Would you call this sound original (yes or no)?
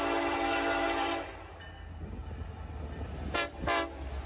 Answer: yes